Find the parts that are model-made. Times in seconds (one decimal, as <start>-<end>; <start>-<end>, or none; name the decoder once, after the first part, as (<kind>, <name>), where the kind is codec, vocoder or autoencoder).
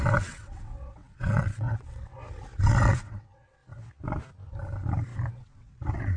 0.0-2.1 (vocoder, WaveNeXt); 2.7-3.6; 5.4-6.2